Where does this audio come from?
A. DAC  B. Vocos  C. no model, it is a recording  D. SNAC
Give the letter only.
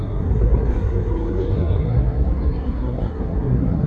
D